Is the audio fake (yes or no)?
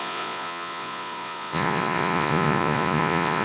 yes